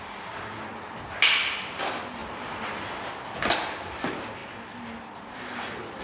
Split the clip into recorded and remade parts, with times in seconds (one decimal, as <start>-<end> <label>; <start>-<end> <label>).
0.0-6.0 recorded